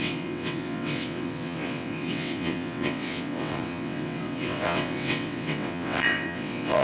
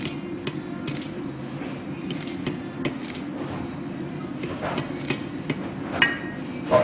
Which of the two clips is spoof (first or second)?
first